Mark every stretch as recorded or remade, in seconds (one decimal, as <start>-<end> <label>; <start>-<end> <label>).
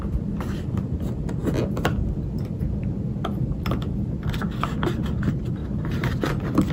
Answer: 0.0-5.6 recorded; 5.6-6.7 remade